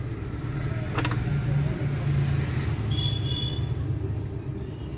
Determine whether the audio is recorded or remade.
recorded